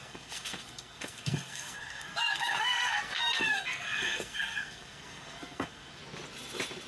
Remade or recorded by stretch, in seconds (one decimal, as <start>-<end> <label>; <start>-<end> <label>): 0.0-6.0 remade; 6.0-6.9 recorded

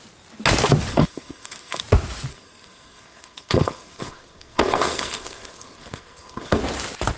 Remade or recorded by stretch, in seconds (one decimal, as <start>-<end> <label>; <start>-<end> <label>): 0.0-0.9 recorded; 0.9-1.8 remade; 1.8-2.3 recorded; 2.3-6.6 remade; 6.6-7.2 recorded

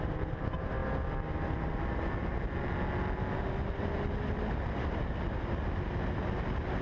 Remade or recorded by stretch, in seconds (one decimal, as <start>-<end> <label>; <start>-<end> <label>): 0.0-6.8 recorded

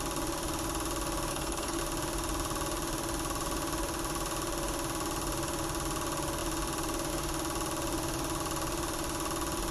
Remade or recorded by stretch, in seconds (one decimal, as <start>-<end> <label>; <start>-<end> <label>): 0.0-1.3 recorded; 1.3-1.8 remade; 1.8-9.7 recorded

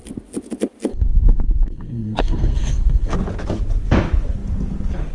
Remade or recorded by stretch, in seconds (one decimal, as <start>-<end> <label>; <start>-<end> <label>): 0.0-0.9 recorded; 0.9-3.1 remade; 3.1-5.1 recorded

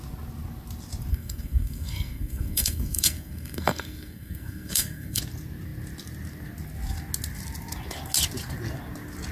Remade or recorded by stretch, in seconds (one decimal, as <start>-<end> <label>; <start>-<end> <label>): 0.0-1.1 recorded; 1.1-5.2 remade; 5.2-9.3 recorded

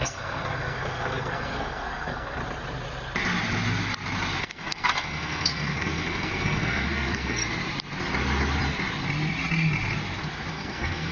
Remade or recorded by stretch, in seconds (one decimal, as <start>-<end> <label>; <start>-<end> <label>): 0.0-2.4 remade; 2.4-4.4 recorded; 4.4-7.4 remade; 7.4-10.5 recorded; 10.5-11.1 remade

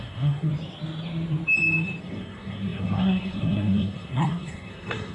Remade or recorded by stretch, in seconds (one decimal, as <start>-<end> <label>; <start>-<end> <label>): 0.0-0.5 remade; 0.5-2.0 recorded; 2.0-5.1 remade